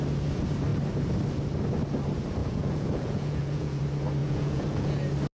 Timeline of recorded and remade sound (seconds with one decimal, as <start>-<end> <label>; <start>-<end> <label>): 0.0-2.4 recorded; 2.4-3.8 remade; 3.8-4.2 recorded; 4.2-4.9 remade; 4.9-5.4 recorded